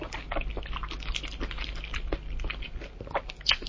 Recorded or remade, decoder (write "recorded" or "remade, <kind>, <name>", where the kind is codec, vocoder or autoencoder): recorded